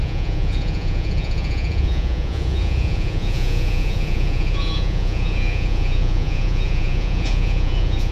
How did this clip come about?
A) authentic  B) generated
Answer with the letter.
B